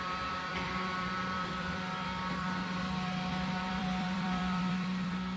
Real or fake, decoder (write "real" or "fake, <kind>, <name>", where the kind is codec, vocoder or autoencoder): fake, vocoder, BigVGAN v2